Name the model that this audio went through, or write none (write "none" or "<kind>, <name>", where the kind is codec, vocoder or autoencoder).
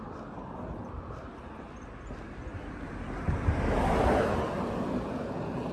none